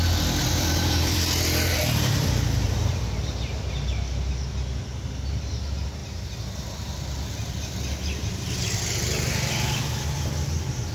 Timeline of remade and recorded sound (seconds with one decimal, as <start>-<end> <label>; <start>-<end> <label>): 0.0-0.4 recorded; 0.4-2.9 remade; 2.9-10.9 recorded